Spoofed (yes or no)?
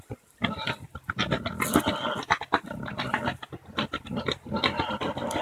no